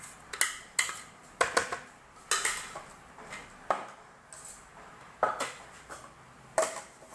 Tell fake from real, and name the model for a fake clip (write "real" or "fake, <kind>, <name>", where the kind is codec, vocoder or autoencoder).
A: real